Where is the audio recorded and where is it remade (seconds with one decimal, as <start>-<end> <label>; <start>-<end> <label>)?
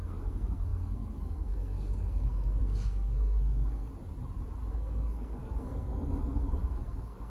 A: 0.0-3.9 remade; 3.9-4.7 recorded; 4.7-7.3 remade